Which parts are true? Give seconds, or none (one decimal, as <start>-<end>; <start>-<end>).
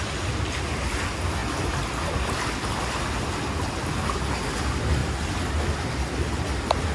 0.0-6.9